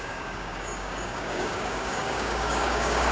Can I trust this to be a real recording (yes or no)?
no